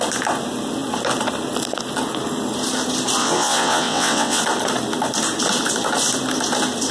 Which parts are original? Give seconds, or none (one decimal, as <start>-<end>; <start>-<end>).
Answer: 0.0-3.2; 4.4-6.9